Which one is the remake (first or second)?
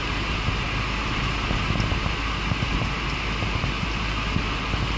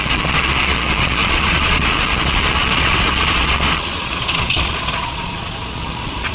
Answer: second